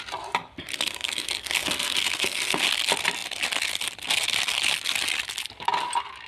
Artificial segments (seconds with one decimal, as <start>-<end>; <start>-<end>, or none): 0.7-2.6